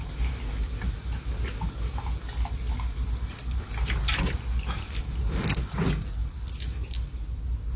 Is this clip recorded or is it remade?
recorded